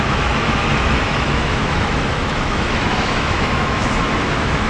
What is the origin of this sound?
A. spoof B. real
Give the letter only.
A